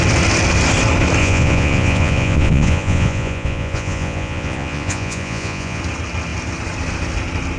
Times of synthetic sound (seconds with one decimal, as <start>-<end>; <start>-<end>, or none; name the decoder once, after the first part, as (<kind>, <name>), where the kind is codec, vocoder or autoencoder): 1.2-5.8 (vocoder, Vocos)